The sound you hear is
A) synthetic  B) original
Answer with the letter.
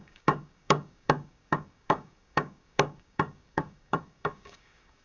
A